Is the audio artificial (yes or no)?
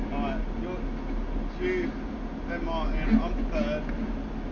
no